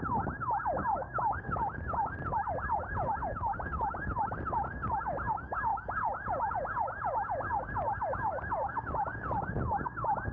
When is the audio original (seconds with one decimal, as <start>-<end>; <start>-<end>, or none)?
5.7-7.6